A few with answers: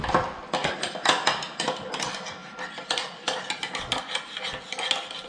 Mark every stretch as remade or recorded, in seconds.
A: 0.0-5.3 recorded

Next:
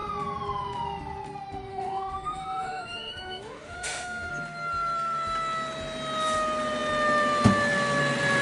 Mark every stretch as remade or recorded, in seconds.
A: 0.0-1.7 recorded; 1.7-4.3 remade; 4.3-8.4 recorded

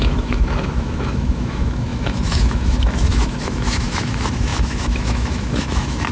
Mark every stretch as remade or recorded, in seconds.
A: 0.0-6.1 remade

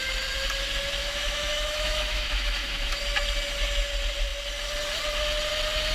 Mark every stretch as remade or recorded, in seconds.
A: 0.0-1.0 recorded; 1.0-3.0 remade; 3.0-5.9 recorded